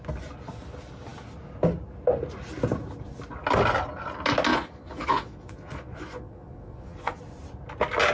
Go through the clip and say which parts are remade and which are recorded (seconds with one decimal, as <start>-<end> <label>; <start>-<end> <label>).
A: 0.0-4.5 recorded; 4.5-7.2 remade; 7.2-8.1 recorded